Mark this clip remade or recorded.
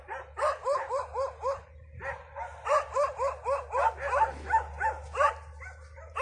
recorded